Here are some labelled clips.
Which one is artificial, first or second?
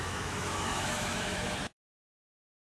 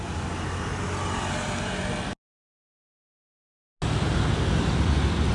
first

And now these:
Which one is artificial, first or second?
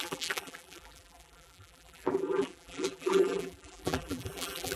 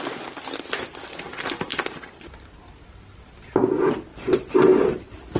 first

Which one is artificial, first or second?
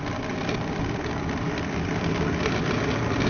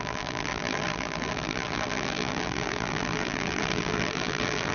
second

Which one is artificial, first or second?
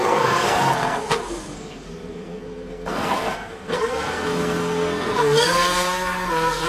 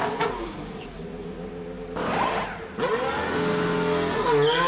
first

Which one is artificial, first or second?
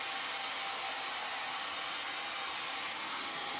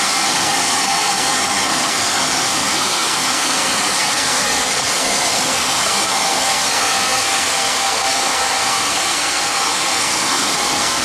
second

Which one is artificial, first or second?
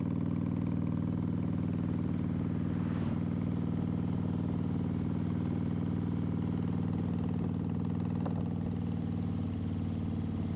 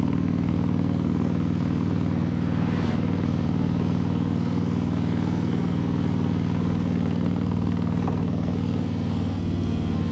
second